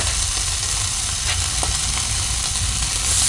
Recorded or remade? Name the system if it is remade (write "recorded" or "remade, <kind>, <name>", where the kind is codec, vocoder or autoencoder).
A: recorded